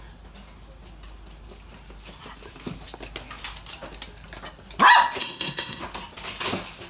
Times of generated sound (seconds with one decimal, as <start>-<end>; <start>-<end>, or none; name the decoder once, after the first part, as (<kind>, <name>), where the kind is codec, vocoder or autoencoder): 5.2-5.8 (codec, SNAC)